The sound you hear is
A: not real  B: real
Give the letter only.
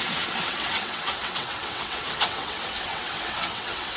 A